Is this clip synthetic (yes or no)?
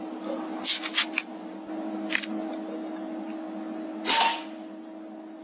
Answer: no